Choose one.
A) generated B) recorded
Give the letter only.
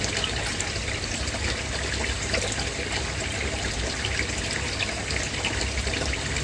B